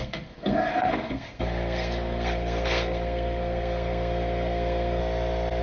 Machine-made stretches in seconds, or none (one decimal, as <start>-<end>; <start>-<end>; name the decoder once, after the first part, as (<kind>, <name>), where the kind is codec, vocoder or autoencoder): 0.0-5.0 (codec, SNAC)